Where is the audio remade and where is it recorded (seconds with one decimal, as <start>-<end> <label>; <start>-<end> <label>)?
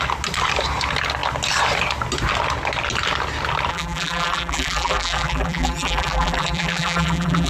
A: 0.0-3.7 recorded; 3.7-7.5 remade